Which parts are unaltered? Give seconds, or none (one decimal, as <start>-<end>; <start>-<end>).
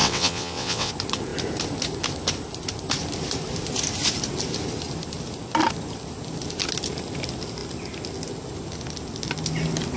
0.9-10.0